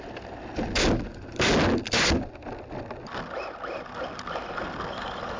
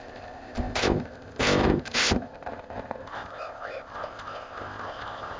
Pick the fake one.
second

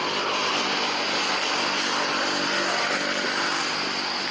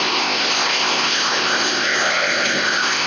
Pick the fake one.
second